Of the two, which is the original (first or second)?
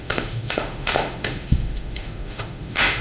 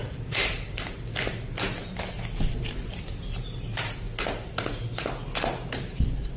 second